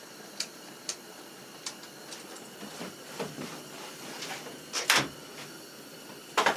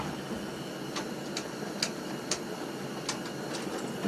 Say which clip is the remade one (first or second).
first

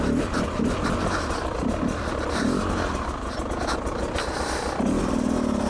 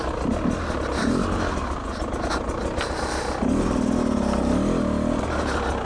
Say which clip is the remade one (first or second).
first